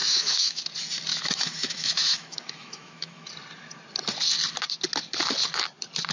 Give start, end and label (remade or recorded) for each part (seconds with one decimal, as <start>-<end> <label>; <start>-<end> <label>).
0.0-0.6 remade; 0.6-1.1 recorded; 1.1-3.3 remade; 3.3-6.1 recorded